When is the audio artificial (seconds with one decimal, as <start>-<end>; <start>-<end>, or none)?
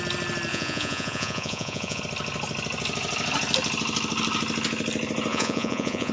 0.5-2.0; 5.3-6.1